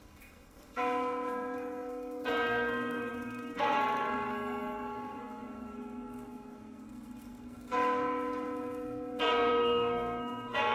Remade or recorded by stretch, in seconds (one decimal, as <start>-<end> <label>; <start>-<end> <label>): 0.0-10.7 remade